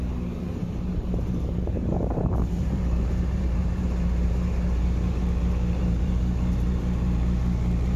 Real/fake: fake